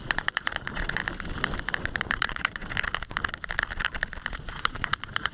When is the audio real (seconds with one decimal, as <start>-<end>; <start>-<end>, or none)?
1.0-1.9; 2.6-4.3